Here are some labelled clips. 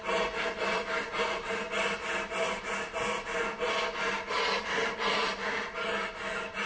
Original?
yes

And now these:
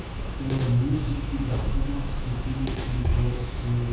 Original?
no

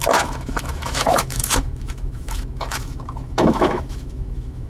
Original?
no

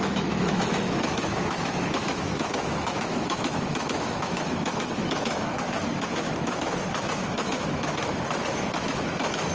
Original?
no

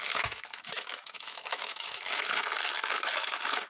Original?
no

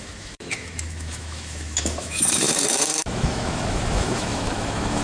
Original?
no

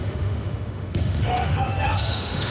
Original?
no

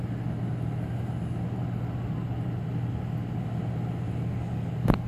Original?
yes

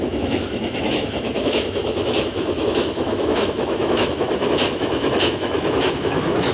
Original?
no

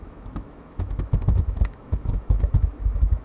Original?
no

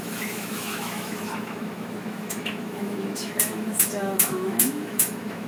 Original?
no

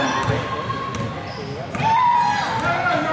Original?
yes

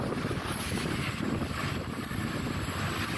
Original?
yes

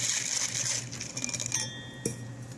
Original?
yes